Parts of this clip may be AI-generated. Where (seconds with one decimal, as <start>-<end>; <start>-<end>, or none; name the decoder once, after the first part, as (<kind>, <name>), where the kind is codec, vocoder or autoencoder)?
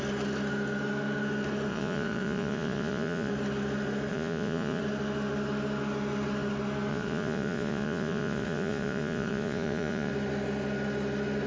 1.7-3.3 (vocoder, Vocos); 4.1-4.8; 6.9-10.1